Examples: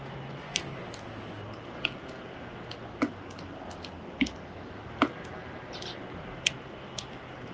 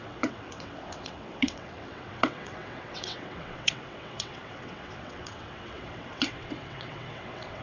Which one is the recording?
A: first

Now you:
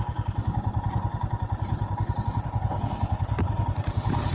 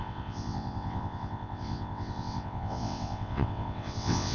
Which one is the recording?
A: first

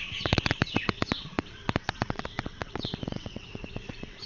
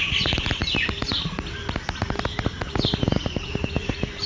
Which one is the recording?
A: second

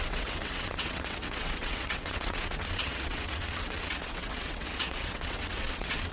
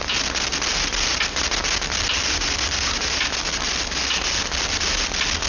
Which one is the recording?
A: second